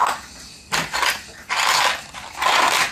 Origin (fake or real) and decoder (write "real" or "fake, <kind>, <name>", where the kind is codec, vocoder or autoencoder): real